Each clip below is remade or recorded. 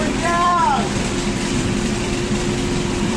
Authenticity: remade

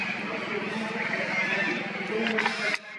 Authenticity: recorded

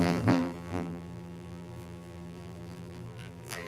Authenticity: remade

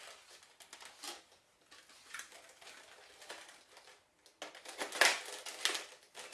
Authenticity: recorded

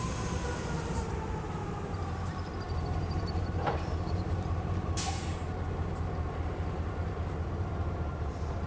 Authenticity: remade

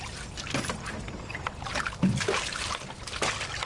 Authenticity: recorded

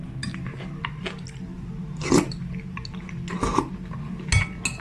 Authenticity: recorded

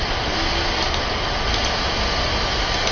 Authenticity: recorded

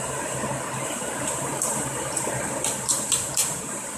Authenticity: remade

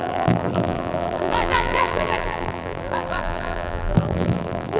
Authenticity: remade